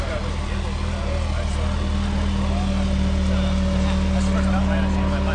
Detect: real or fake real